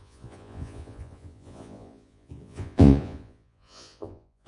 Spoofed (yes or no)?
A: yes